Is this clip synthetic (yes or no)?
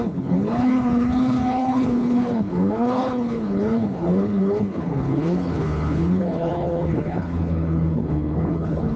yes